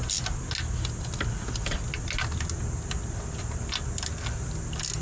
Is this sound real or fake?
real